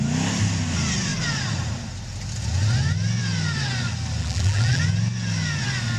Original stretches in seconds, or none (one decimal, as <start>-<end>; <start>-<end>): 0.0-4.2; 4.8-6.0